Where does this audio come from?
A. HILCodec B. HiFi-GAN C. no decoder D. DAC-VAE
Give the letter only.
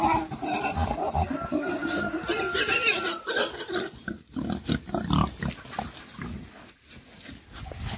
C